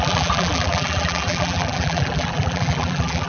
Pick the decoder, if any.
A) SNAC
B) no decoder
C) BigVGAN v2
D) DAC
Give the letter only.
C